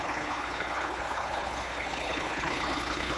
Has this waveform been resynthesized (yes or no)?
yes